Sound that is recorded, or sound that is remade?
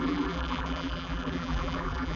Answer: remade